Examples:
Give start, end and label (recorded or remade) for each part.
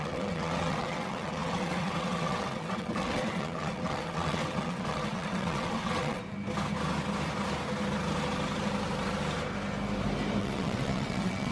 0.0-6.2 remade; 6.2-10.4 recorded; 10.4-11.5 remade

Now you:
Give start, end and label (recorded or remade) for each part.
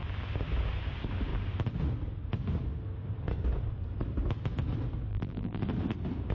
0.0-5.1 recorded; 5.1-5.6 remade; 5.6-6.3 recorded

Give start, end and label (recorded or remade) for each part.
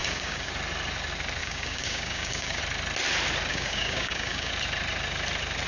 0.0-0.5 remade; 0.5-1.4 recorded; 1.4-2.6 remade; 2.6-3.5 recorded; 3.5-4.5 remade; 4.5-5.7 recorded